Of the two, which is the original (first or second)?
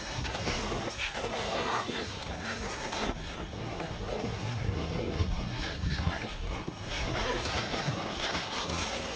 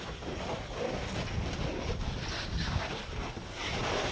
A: second